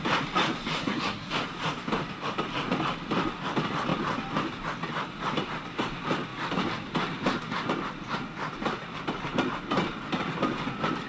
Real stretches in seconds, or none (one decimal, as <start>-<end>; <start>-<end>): 0.0-0.8; 1.3-11.1